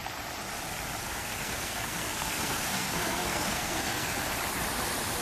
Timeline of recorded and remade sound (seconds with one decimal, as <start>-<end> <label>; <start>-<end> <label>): 0.0-1.0 recorded; 1.0-4.1 remade; 4.1-5.2 recorded